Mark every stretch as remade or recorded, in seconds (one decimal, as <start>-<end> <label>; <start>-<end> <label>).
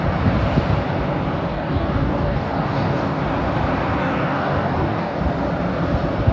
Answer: 0.0-1.5 recorded; 1.5-3.2 remade; 3.2-4.0 recorded; 4.0-5.2 remade; 5.2-6.3 recorded